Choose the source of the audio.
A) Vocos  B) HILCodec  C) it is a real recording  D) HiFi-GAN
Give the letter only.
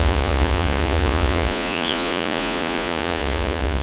A